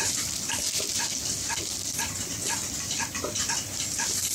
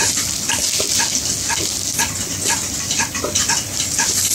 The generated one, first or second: first